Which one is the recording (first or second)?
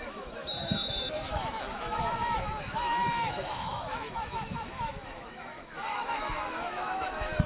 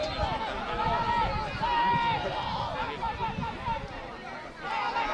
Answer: second